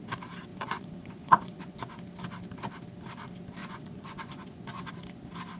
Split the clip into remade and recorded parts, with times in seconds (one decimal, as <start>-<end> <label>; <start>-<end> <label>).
0.0-0.5 recorded; 0.5-1.8 remade; 1.8-3.6 recorded; 3.6-4.9 remade; 4.9-5.6 recorded